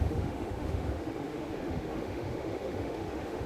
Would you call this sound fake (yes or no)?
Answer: yes